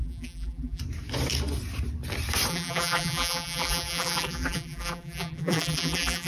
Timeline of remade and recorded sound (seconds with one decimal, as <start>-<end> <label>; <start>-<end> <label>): 0.0-0.8 remade; 0.8-2.5 recorded; 2.5-6.3 remade